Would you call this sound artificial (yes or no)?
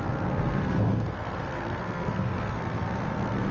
yes